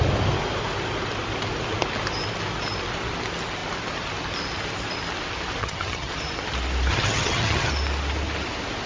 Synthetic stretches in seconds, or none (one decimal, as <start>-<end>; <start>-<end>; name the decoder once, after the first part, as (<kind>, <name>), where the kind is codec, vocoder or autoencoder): 5.6-6.1 (vocoder, HiFi-GAN); 6.9-7.7